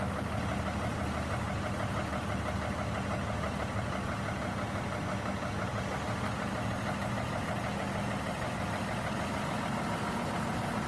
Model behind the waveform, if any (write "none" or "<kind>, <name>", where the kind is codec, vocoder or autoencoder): none